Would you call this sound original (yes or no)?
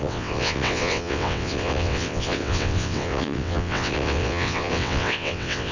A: no